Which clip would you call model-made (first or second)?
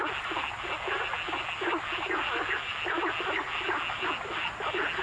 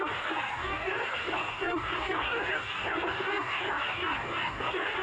second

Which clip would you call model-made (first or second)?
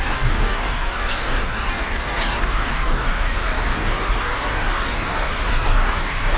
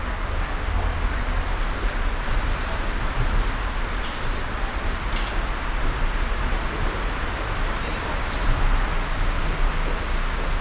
first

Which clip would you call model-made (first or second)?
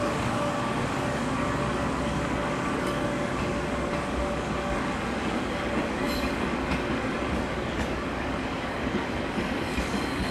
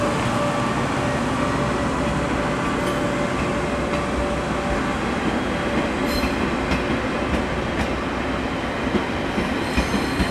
first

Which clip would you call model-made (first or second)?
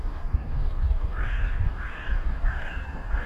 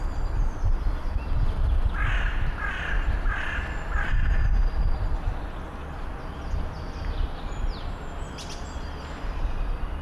first